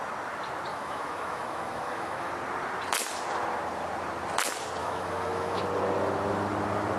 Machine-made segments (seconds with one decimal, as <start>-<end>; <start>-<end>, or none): 0.7-2.3; 4.8-5.6